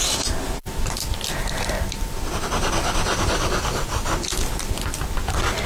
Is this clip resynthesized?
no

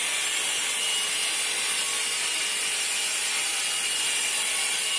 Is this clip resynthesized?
yes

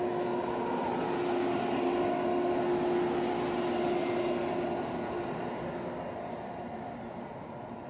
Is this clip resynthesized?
no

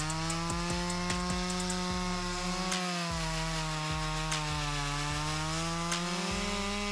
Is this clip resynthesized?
no